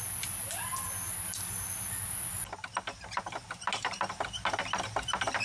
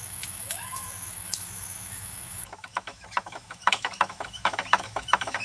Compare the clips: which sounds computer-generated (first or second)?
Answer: second